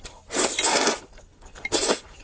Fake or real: real